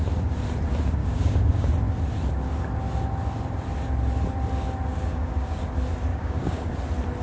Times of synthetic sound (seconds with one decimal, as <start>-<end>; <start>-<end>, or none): 1.0-1.7; 4.9-5.6; 6.1-6.7